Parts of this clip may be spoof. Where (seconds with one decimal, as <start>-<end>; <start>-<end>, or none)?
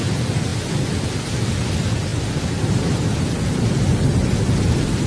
none